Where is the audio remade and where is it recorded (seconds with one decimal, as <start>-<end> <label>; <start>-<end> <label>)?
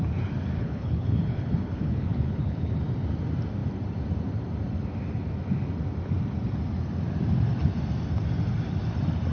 0.0-0.6 recorded; 0.6-2.8 remade; 2.8-9.3 recorded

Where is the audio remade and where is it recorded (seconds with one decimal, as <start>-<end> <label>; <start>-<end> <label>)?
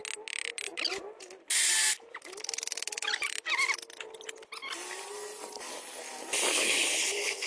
0.0-6.5 recorded; 6.5-7.5 remade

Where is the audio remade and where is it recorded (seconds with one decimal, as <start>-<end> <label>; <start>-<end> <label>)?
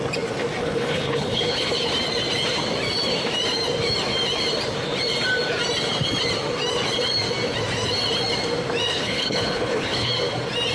0.0-0.6 recorded; 0.6-1.7 remade; 1.7-8.9 recorded; 8.9-10.1 remade; 10.1-10.7 recorded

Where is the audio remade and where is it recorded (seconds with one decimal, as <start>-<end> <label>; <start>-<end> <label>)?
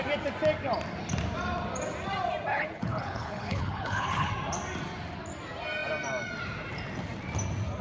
0.0-2.5 recorded; 2.5-4.3 remade; 4.3-7.8 recorded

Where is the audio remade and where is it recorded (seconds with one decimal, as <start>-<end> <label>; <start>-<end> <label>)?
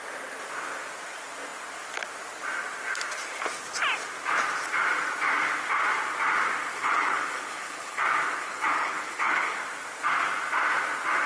0.0-6.7 recorded; 6.7-8.0 remade; 8.0-8.4 recorded; 8.4-9.6 remade; 9.6-11.3 recorded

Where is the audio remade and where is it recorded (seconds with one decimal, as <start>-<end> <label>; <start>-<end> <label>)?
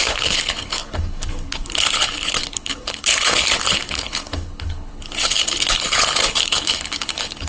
0.0-7.5 remade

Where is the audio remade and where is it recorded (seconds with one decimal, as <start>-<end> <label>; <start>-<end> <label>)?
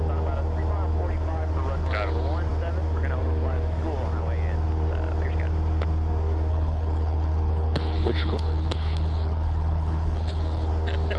0.0-6.5 recorded; 6.5-10.7 remade; 10.7-11.2 recorded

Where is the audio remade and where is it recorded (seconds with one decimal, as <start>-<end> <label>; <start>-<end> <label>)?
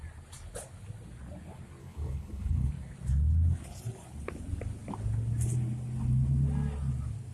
0.0-1.8 recorded; 1.8-2.7 remade; 2.7-7.3 recorded